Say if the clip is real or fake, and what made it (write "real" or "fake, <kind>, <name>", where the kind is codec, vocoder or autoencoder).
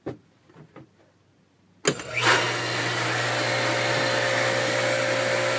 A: real